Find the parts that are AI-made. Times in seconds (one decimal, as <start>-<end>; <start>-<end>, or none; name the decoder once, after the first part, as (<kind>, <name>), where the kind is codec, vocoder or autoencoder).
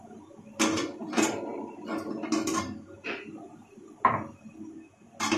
none